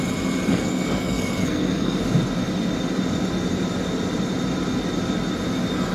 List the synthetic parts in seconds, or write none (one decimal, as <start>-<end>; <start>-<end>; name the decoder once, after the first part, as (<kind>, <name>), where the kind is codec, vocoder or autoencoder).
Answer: 0.5-2.0 (codec, SNAC)